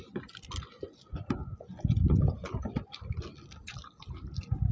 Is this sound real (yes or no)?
yes